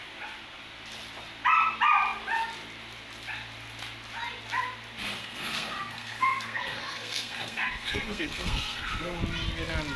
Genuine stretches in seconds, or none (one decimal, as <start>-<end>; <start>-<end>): 0.0-5.2; 9.2-10.0